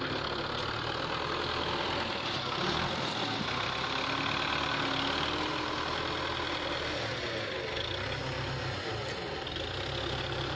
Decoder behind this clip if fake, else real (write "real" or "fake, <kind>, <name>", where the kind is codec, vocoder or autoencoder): real